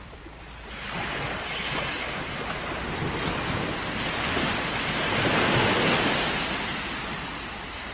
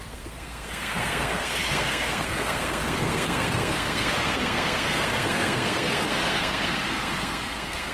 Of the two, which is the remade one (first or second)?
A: second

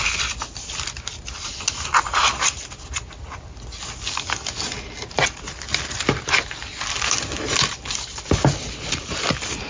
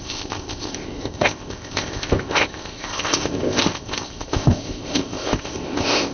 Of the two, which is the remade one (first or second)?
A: second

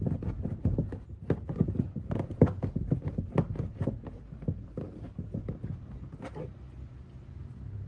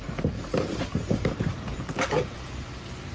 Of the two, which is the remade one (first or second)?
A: second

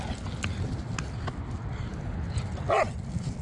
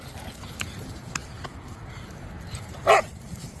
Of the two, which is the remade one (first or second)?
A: second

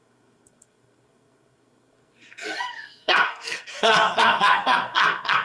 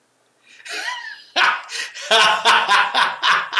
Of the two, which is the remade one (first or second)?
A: first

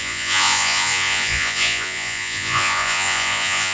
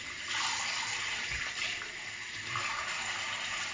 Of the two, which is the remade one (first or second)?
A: first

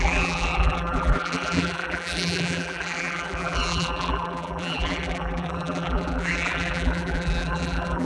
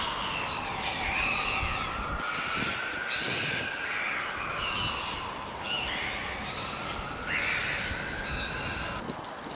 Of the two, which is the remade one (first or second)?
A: first